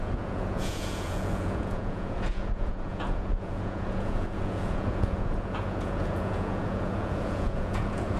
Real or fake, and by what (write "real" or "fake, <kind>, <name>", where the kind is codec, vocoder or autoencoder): fake, vocoder, Vocos